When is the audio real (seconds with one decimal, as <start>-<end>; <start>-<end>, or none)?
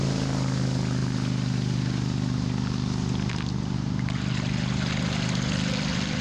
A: 0.0-6.2